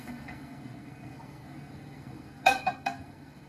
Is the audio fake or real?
fake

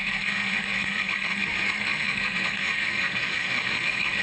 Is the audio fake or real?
fake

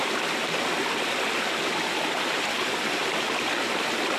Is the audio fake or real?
real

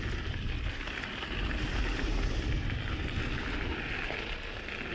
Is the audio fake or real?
real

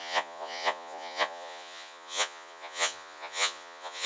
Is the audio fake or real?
fake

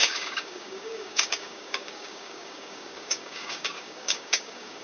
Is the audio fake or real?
fake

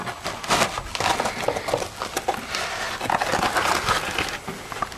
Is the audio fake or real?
real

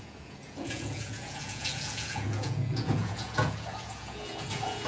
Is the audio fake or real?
fake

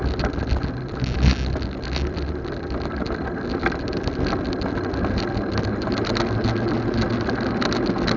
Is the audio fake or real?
real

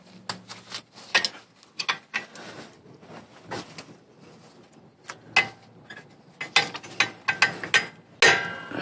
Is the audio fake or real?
real